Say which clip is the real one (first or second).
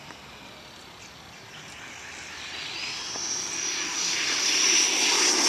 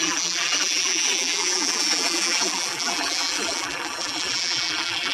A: first